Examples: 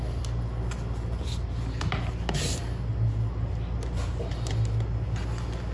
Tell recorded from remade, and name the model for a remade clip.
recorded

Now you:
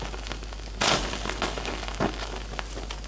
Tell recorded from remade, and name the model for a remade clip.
recorded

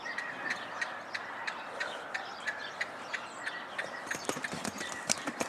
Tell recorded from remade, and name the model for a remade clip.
recorded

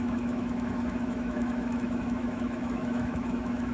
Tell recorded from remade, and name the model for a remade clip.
remade, autoencoder, DAC-VAE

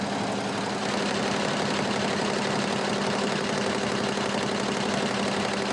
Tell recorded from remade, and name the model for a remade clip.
recorded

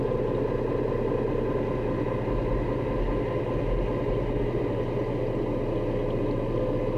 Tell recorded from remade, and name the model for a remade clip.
recorded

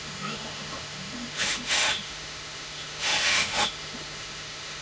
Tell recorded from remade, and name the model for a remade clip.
remade, autoencoder, DAC-VAE